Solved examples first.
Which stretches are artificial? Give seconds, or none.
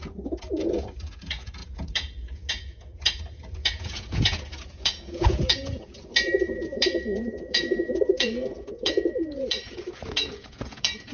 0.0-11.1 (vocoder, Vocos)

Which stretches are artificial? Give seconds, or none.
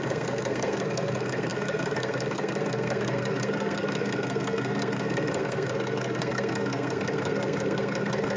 0.0-8.4 (codec, SNAC)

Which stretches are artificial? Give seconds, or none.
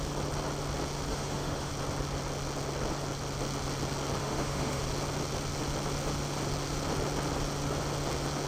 1.1-1.7 (autoencoder, DAC-VAE); 4.2-4.8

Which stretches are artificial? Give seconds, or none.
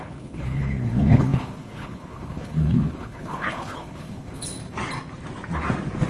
0.0-4.5 (codec, HILCodec)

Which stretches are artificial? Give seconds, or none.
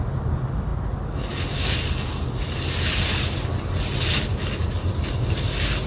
none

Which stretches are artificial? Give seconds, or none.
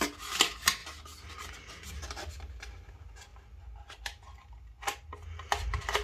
none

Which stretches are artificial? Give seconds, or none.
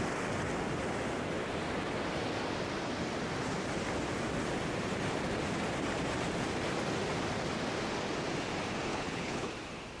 8.9-9.5 (codec, HILCodec)